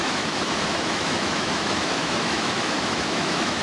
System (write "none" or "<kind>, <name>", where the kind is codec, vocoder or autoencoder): autoencoder, DAC-VAE